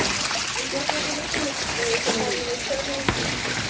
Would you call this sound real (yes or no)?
yes